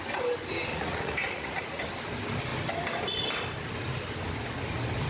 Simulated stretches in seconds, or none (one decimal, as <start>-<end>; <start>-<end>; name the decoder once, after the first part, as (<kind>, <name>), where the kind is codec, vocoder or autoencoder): 0.7-1.8 (vocoder, Vocos)